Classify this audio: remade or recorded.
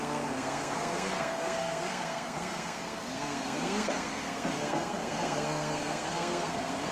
remade